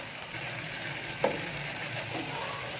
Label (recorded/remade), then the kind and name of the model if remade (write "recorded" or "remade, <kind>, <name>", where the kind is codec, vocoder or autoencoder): recorded